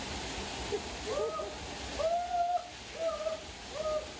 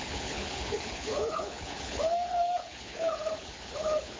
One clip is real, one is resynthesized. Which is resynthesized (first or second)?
second